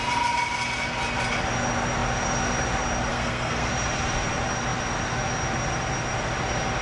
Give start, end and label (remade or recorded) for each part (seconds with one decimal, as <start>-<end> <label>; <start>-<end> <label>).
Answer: 0.0-3.1 recorded; 3.1-3.7 remade; 3.7-6.8 recorded